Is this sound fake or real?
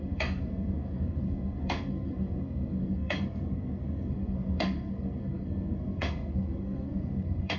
fake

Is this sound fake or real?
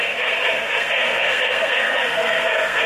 fake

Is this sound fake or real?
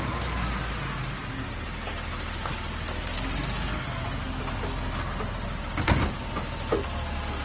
real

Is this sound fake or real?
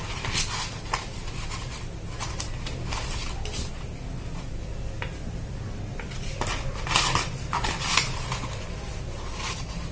real